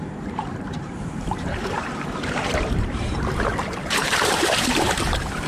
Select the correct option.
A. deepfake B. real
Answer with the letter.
A